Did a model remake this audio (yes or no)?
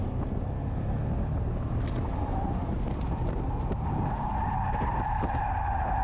no